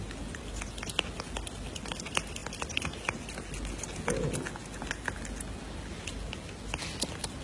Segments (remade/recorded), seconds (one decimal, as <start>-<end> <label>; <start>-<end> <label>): 0.0-7.4 recorded